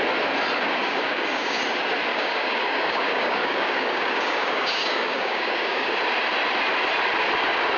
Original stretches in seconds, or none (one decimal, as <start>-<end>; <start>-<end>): 0.0-0.8; 1.6-2.1; 5.9-7.8